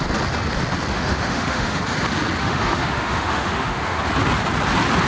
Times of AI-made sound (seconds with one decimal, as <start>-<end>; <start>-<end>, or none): 0.9-1.8; 2.4-4.0

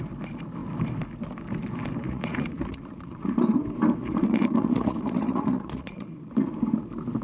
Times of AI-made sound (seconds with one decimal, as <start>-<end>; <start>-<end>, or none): 2.0-3.4; 4.0-6.5

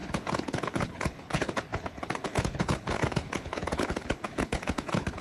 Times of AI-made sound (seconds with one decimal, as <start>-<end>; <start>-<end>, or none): 0.0-5.2

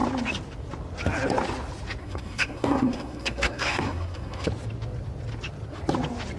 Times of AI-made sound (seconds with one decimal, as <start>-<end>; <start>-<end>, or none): 2.0-4.5

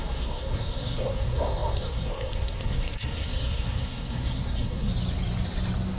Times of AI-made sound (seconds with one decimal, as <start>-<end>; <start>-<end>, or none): 0.0-4.9

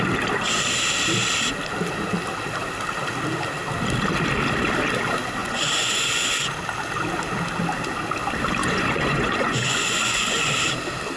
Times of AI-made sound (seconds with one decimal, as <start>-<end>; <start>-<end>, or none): 5.4-6.5; 8.6-10.5

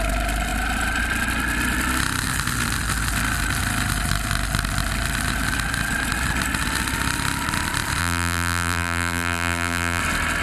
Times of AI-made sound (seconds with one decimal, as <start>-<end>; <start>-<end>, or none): 8.0-10.0